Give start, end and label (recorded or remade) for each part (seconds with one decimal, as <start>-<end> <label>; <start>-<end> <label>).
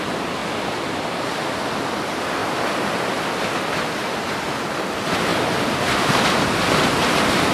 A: 0.0-0.4 recorded; 0.4-1.3 remade; 1.3-5.3 recorded; 5.3-6.2 remade; 6.2-7.5 recorded